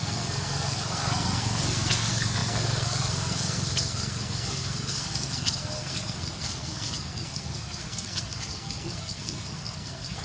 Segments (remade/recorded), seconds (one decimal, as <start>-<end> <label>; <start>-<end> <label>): 0.0-10.2 remade